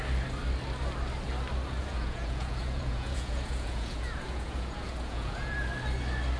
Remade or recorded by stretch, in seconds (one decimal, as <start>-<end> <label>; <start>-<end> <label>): 0.0-1.8 recorded; 1.8-5.6 remade; 5.6-6.4 recorded